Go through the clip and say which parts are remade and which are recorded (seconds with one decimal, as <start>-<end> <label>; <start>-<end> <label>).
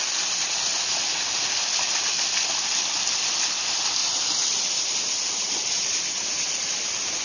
0.0-4.0 recorded; 4.0-7.2 remade